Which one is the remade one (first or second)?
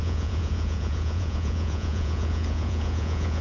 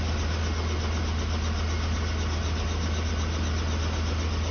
first